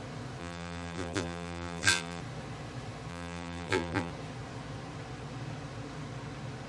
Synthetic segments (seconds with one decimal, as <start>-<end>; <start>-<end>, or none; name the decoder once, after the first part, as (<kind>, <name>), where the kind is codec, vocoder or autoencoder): 0.4-2.2 (vocoder, BigVGAN v2); 3.1-4.1